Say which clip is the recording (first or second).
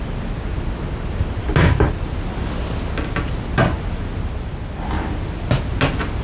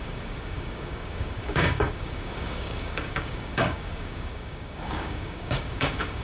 first